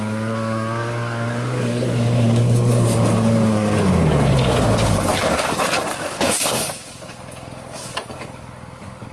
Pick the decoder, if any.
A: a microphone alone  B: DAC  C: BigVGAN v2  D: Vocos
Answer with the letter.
B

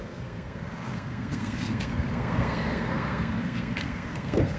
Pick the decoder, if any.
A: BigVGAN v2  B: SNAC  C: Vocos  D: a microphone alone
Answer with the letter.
B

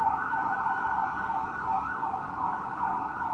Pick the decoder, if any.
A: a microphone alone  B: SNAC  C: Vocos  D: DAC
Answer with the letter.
D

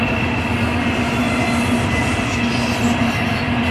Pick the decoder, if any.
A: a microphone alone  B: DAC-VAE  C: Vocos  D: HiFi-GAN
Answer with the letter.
A